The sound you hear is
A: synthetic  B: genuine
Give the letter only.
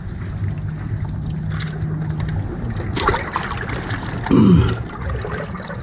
B